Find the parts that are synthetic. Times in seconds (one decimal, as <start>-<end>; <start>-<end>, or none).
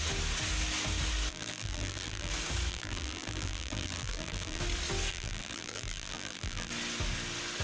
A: 1.3-2.3; 2.7-4.6; 5.1-6.7